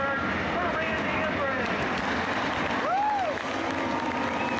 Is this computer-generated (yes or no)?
yes